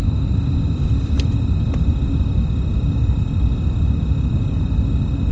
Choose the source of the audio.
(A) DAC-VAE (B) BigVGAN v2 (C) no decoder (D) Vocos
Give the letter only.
C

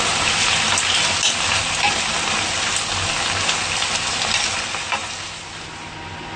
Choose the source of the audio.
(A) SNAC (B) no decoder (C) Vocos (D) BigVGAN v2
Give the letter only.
B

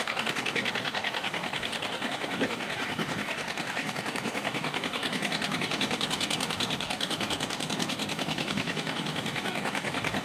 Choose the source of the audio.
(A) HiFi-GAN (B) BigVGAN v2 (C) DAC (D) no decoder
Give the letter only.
C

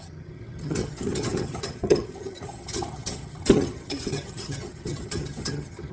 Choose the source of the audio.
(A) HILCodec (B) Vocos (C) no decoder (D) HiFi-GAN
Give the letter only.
D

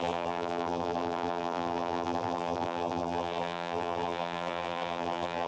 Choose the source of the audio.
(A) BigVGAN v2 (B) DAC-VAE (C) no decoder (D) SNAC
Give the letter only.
A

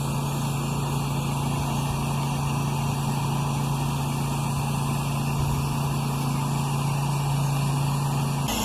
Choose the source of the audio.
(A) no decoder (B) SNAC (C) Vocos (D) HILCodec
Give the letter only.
A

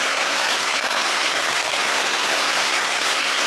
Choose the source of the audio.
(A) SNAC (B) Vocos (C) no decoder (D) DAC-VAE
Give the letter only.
A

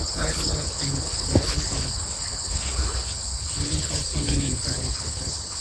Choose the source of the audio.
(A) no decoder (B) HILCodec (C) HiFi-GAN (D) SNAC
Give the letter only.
B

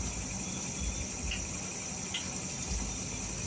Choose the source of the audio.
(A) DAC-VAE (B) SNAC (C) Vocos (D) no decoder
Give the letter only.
D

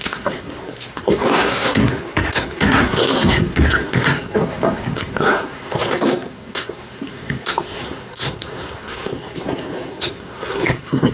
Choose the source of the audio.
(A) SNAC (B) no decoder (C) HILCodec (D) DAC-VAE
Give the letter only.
A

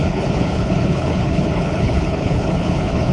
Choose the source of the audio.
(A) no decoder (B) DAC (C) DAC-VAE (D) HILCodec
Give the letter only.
D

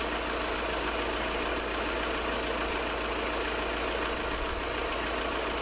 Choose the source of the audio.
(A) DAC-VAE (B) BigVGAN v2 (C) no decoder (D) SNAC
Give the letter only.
C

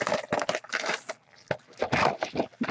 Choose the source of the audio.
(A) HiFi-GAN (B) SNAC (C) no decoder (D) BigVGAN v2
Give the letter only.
C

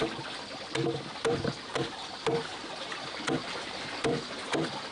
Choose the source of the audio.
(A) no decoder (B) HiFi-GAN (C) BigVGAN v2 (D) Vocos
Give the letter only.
A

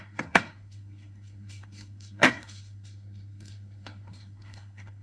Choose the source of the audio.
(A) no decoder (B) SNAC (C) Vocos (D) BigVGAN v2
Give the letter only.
B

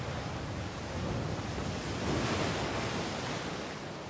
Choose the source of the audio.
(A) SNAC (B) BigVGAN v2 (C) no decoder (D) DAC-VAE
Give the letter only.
C